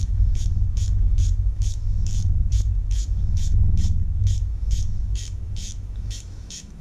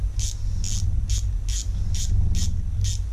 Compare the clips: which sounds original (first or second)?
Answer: second